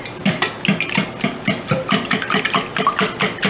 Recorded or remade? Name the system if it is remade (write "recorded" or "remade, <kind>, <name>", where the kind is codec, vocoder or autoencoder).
recorded